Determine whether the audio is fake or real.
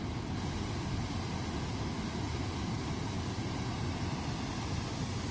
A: real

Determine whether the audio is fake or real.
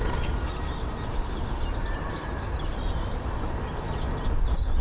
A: real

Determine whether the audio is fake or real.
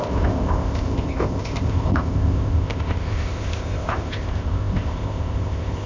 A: fake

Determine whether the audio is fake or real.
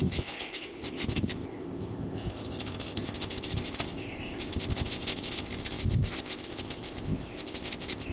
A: fake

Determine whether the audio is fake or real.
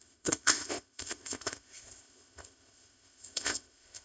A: fake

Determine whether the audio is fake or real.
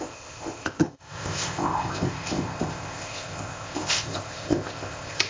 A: fake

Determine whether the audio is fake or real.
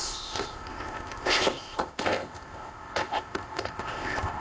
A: fake